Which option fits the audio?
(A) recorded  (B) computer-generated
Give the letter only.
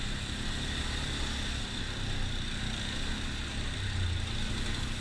A